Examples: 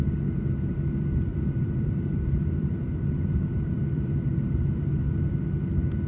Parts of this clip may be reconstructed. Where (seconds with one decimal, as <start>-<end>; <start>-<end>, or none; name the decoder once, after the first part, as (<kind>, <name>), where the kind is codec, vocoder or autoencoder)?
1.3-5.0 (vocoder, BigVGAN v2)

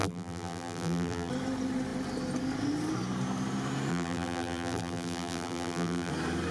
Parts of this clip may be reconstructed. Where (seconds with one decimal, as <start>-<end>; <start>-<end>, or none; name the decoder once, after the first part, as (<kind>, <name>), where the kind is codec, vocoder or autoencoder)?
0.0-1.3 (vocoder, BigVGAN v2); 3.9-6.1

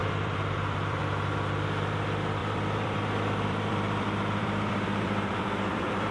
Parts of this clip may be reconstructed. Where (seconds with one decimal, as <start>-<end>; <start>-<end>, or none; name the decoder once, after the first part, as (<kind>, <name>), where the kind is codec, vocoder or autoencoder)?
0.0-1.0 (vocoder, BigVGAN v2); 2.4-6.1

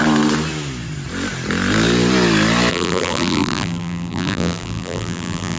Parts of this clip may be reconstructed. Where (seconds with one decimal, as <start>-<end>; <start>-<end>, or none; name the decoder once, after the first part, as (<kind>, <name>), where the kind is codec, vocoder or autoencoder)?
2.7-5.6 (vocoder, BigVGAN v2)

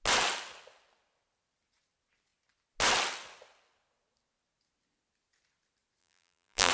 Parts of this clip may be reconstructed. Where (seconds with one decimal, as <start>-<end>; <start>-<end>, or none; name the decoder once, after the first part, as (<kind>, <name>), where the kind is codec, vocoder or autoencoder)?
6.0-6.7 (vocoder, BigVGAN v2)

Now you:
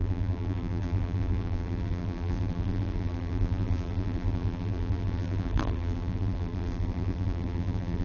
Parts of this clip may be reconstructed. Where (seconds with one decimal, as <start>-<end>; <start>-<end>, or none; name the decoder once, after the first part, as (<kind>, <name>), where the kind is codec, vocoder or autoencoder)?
0.0-8.0 (vocoder, BigVGAN v2)

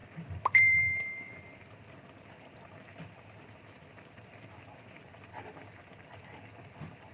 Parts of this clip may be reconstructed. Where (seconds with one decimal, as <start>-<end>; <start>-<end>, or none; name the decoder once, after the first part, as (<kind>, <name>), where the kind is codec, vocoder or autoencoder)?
0.0-4.3 (vocoder, BigVGAN v2)

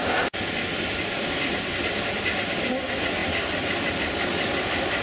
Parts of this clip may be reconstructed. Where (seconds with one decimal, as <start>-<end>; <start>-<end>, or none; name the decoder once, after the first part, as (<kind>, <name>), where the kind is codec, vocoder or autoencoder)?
none